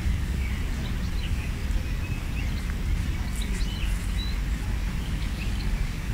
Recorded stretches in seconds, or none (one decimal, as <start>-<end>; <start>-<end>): 0.5-1.2; 1.6-5.0